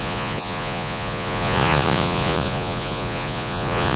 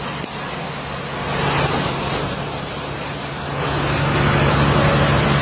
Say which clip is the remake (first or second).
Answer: first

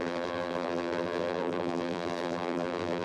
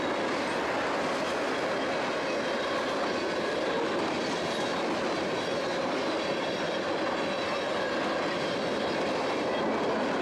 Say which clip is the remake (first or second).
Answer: first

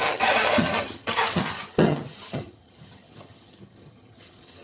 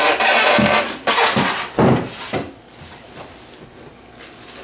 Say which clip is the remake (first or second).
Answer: first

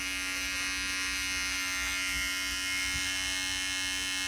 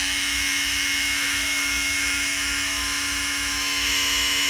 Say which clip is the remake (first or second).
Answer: second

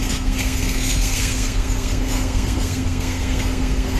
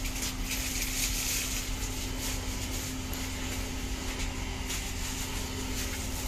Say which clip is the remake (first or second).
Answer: first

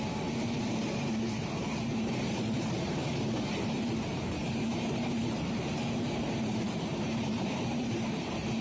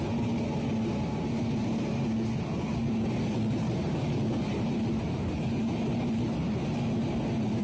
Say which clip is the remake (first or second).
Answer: first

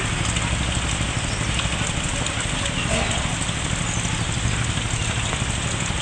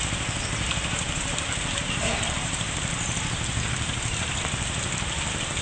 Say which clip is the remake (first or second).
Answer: second